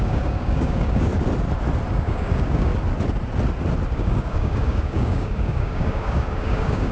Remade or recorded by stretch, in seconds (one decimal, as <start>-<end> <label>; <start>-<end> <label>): 0.0-1.1 remade; 1.1-1.9 recorded; 1.9-2.7 remade; 2.7-3.9 recorded; 3.9-6.9 remade